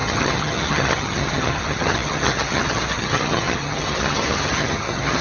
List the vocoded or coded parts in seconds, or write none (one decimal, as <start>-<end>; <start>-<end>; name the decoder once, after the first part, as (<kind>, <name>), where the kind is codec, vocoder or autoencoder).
0.0-5.2 (vocoder, HiFi-GAN)